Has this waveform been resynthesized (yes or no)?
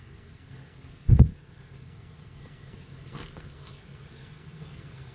yes